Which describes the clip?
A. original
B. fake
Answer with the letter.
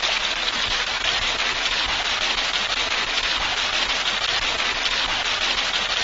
A